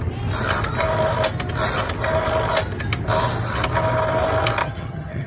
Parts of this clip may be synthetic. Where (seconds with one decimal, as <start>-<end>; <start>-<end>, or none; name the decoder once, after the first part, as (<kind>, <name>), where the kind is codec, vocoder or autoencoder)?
4.6-5.3 (vocoder, HiFi-GAN)